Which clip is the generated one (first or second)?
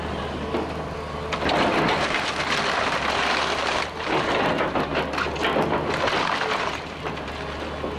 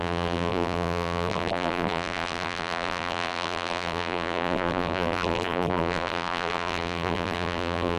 second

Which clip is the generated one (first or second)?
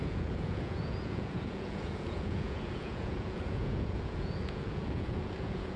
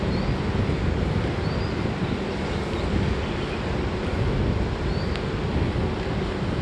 first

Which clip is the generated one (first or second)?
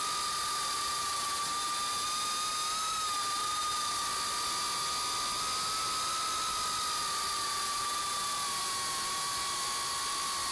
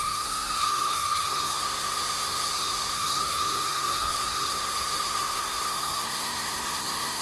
second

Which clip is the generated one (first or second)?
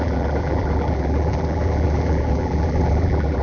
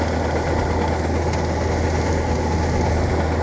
first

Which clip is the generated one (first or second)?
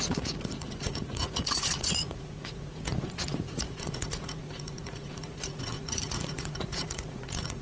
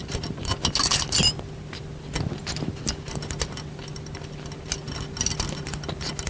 first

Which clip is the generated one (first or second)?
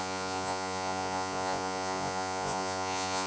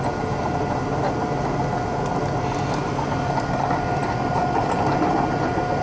first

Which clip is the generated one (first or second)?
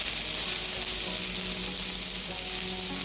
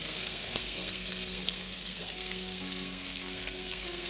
second